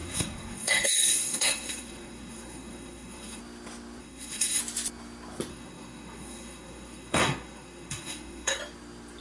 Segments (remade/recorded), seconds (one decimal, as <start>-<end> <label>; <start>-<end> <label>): 0.0-3.4 remade; 3.4-4.0 recorded; 4.0-4.6 remade; 4.6-5.5 recorded; 5.5-8.6 remade; 8.6-9.2 recorded